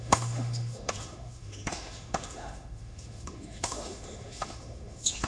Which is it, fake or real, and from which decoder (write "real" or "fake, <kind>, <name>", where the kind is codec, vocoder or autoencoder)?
fake, autoencoder, DAC-VAE